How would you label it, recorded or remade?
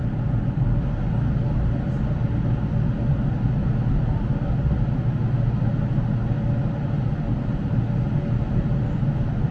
recorded